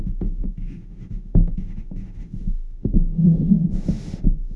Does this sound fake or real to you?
fake